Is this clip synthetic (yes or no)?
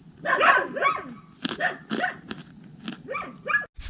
no